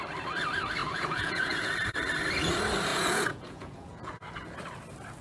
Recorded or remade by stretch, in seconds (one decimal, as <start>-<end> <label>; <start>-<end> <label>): 0.0-0.8 recorded; 0.8-1.7 remade; 1.7-2.9 recorded; 2.9-4.1 remade; 4.1-5.2 recorded